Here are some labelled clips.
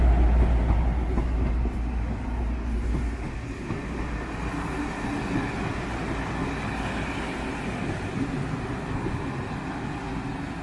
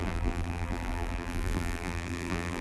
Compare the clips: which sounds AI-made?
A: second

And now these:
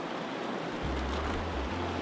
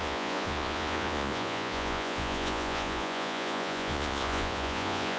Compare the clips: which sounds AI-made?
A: second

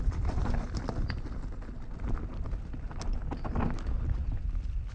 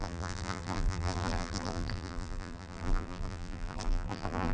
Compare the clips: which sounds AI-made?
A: second